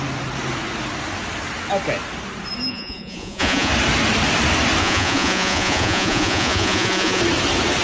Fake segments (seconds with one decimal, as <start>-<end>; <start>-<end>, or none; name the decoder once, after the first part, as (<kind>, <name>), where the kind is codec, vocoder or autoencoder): 2.7-3.7 (vocoder, Vocos); 4.8-7.2